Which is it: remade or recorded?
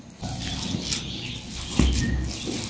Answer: recorded